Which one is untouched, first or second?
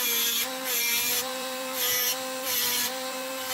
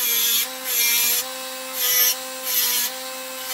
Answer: second